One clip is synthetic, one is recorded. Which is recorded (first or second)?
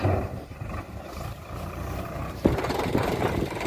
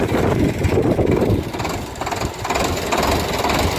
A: second